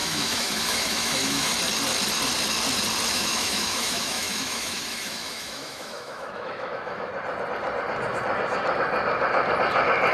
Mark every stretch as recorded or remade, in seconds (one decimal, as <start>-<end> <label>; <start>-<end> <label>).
0.0-1.5 remade; 1.5-3.1 recorded; 3.1-7.1 remade; 7.1-10.1 recorded